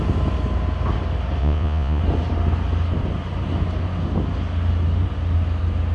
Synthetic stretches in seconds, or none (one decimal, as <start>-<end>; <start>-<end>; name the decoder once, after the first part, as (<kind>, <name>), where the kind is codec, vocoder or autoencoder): 1.4-2.0 (vocoder, Vocos)